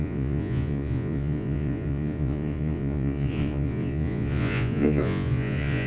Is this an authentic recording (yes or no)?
no